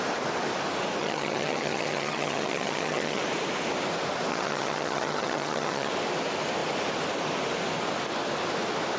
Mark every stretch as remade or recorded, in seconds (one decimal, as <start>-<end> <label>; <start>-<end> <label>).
0.0-1.0 recorded; 1.0-3.2 remade; 3.2-4.3 recorded; 4.3-5.9 remade; 5.9-9.0 recorded